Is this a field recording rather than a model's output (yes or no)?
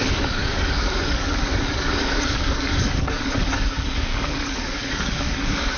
no